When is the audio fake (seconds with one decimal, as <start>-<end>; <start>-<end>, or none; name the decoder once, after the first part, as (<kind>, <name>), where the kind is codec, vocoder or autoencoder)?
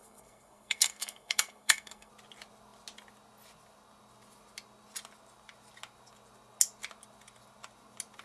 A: 0.0-2.1 (codec, SNAC)